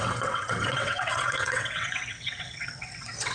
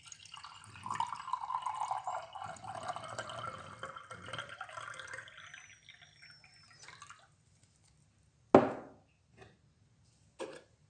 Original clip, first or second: second